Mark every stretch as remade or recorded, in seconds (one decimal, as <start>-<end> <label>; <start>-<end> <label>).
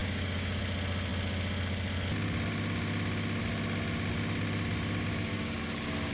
0.0-0.6 remade; 0.6-5.3 recorded; 5.3-6.1 remade